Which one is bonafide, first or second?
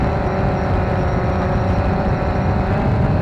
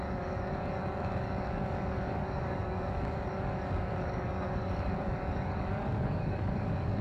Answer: first